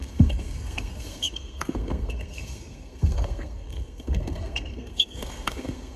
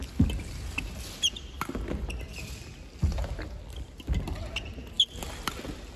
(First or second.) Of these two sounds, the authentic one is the second